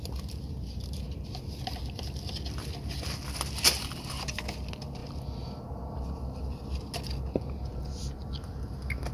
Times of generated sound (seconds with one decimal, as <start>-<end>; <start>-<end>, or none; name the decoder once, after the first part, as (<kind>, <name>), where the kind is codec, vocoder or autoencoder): none